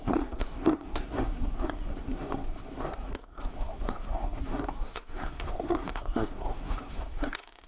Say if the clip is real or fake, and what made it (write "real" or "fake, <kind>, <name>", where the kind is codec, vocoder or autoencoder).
fake, codec, SNAC